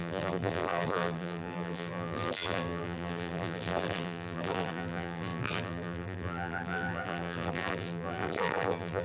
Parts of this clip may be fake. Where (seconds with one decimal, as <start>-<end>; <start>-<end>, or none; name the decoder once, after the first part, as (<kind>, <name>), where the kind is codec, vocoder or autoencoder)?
0.0-9.0 (vocoder, BigVGAN v2)